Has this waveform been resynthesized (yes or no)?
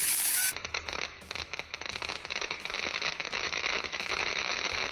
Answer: yes